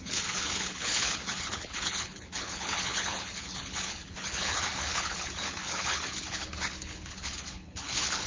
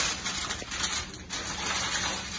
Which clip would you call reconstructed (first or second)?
first